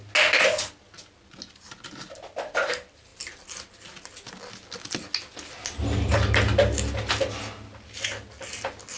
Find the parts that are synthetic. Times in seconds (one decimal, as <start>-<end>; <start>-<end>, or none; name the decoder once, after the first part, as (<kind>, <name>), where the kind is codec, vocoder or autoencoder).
none